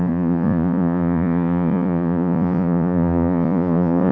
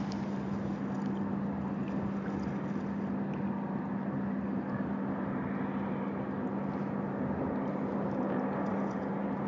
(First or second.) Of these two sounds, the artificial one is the first